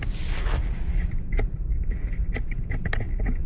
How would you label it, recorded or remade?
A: recorded